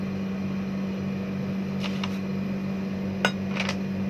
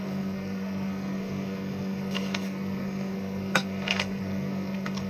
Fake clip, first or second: second